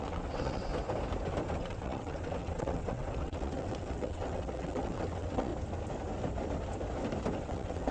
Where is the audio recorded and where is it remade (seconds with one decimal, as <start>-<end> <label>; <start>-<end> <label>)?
0.0-0.7 remade; 0.7-1.5 recorded; 1.5-5.5 remade; 5.5-7.4 recorded; 7.4-7.9 remade